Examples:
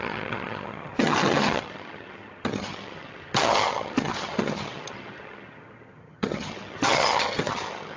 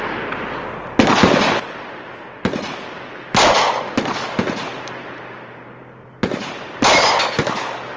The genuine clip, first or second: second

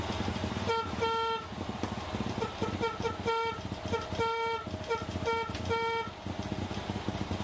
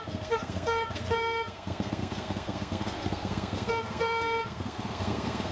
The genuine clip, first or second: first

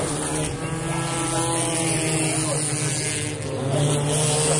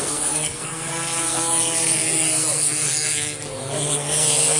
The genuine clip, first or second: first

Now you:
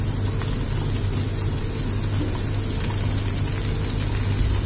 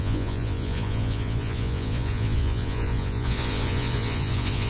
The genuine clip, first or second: first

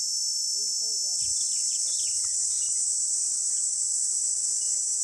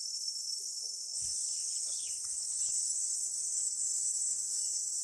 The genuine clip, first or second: first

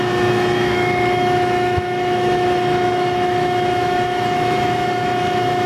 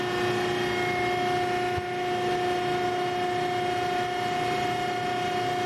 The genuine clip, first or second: second